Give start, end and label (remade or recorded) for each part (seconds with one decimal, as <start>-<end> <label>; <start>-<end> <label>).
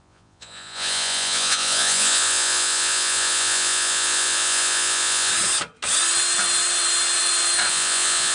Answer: 0.0-5.3 remade; 5.3-7.7 recorded; 7.7-8.3 remade